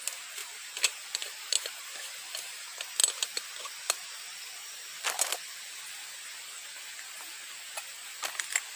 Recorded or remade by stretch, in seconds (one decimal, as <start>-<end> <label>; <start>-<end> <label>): 0.0-8.8 recorded